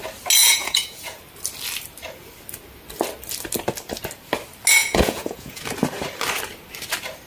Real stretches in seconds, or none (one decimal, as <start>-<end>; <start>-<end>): 0.0-0.4; 1.2-4.8; 5.6-7.3